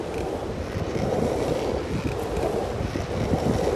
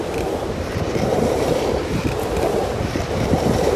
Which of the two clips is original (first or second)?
first